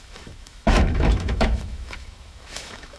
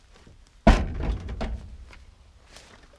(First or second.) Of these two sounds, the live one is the second